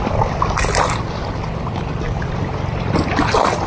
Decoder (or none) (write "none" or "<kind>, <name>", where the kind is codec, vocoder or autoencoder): none